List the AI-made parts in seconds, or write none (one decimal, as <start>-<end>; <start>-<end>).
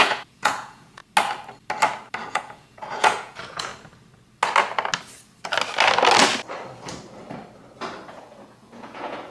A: 0.0-1.0; 2.3-3.7; 8.1-9.3